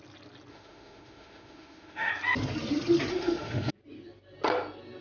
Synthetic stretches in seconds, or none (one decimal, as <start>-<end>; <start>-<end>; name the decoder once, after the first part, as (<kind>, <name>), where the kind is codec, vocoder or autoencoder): 0.5-2.1 (autoencoder, DAC-VAE); 3.1-3.7